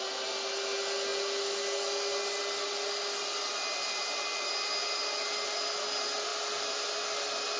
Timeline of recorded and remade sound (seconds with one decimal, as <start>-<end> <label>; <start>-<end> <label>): 0.0-7.6 recorded